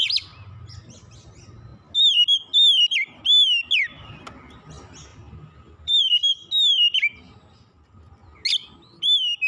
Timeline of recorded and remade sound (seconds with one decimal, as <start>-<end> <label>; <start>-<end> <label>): 0.0-5.1 recorded; 5.1-6.5 remade; 6.5-9.5 recorded